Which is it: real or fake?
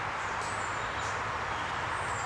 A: real